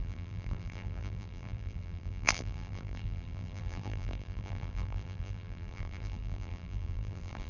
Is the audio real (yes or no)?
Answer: no